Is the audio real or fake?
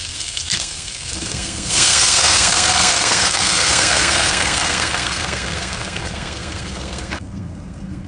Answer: fake